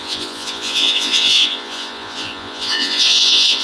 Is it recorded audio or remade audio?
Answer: remade